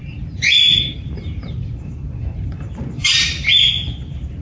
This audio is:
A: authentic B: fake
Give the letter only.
B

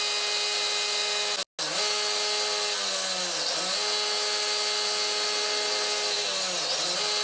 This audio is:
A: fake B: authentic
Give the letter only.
B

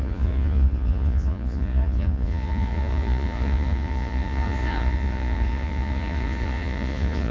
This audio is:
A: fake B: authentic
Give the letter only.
A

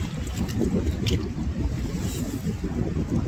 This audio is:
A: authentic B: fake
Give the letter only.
A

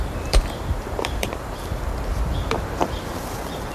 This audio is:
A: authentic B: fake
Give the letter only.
B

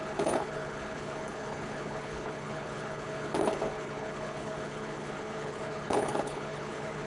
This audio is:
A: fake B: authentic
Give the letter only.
A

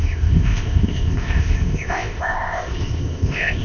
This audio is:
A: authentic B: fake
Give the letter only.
B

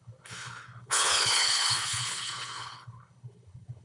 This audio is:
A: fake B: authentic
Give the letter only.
A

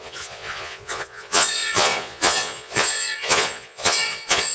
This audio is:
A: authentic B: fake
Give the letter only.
B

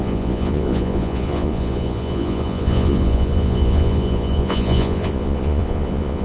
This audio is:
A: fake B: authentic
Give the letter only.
A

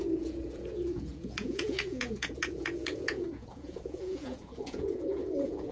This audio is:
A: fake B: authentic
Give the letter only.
A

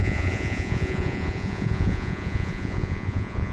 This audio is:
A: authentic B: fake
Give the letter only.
B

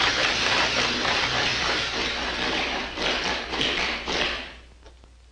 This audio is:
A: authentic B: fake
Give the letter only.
B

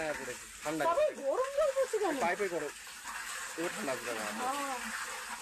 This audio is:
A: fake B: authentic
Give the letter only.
B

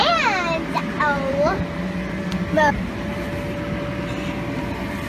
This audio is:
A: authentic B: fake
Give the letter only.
A